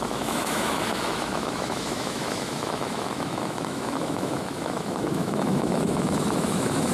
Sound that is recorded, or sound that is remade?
remade